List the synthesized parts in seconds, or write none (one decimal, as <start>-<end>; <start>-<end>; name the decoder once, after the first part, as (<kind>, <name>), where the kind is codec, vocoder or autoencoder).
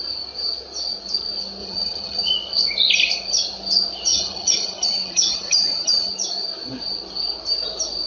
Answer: 1.6-2.3 (vocoder, HiFi-GAN); 4.1-6.1